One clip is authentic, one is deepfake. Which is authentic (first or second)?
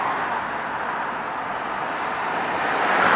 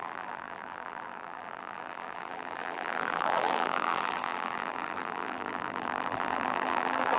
first